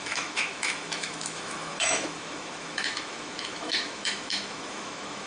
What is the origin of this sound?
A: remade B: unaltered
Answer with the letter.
A